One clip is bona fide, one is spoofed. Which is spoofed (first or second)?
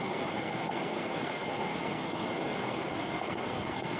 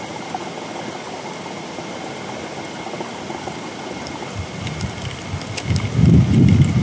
first